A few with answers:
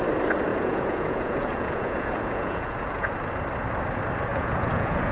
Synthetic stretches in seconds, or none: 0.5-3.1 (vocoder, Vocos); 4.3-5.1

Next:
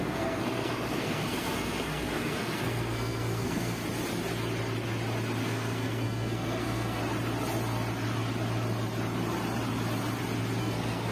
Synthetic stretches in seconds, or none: 0.0-3.8 (codec, SNAC); 5.4-7.0; 10.6-11.1

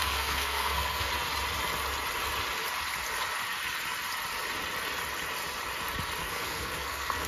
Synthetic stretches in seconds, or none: 0.0-1.1 (codec, SNAC); 6.2-7.3

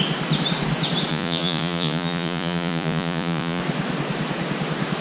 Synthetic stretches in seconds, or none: 1.1-3.6 (vocoder, Vocos)

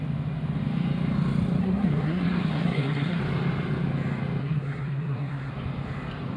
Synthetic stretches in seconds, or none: 1.6-3.2 (codec, SNAC); 4.4-5.5

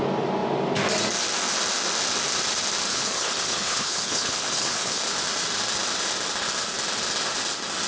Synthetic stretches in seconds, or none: 2.9-5.0 (codec, HILCodec)